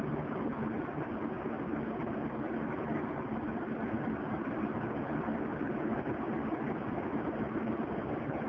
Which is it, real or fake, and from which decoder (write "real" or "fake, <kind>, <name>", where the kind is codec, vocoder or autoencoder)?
real